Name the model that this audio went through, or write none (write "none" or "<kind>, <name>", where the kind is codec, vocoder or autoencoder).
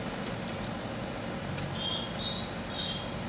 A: none